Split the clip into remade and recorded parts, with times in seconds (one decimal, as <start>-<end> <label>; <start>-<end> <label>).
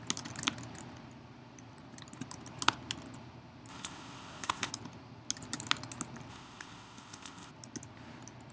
0.0-3.7 recorded; 3.7-4.7 remade; 4.7-6.3 recorded; 6.3-7.5 remade; 7.5-8.5 recorded